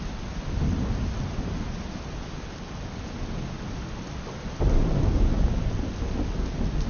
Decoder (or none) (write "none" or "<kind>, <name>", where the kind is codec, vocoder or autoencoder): none